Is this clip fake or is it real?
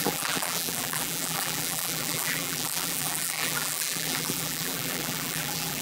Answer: fake